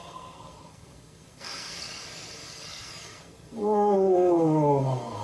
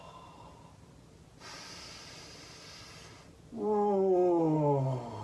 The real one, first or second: second